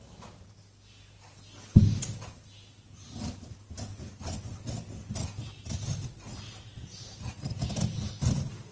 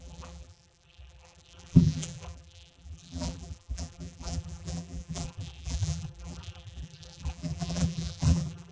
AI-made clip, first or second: second